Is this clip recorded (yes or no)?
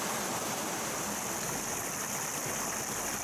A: yes